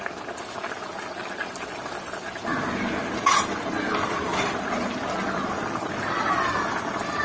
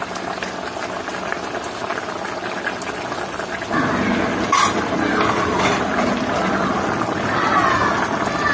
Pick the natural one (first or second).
second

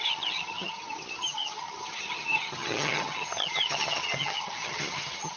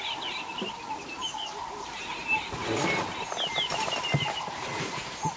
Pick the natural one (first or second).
second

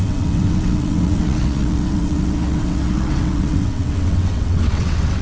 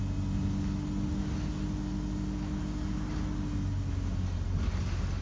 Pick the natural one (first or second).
second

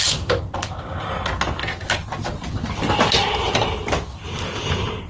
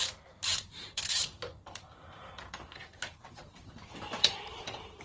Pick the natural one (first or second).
first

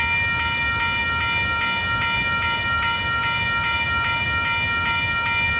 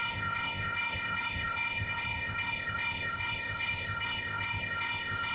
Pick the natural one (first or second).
first